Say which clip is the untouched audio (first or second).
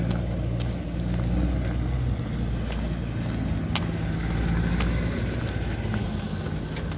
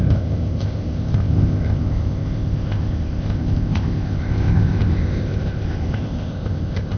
first